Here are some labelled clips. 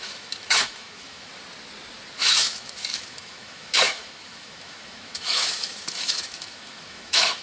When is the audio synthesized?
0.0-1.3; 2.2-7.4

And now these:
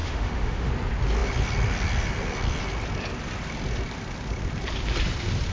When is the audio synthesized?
0.0-0.7

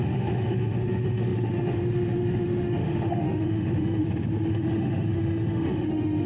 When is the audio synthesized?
0.0-4.0; 4.5-6.3

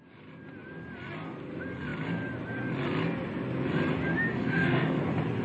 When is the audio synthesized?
4.3-5.0

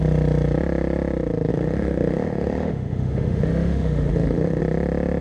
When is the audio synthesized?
1.5-4.6

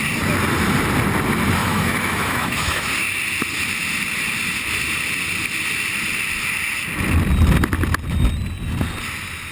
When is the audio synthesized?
1.6-2.9

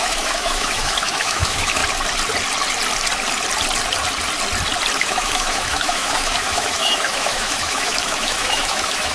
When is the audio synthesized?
0.0-1.8; 5.0-9.1